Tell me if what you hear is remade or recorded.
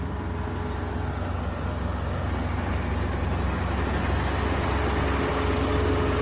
recorded